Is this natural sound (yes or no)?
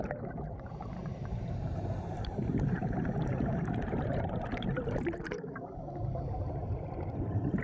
no